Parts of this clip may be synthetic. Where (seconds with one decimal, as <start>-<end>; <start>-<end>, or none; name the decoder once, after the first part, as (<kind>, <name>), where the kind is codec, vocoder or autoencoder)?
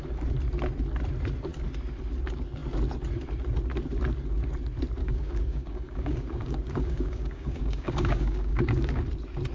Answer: 5.0-9.0 (codec, DAC)